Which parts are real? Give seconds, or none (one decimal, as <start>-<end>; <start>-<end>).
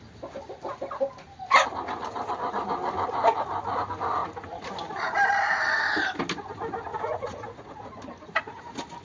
0.0-6.9; 8.0-9.0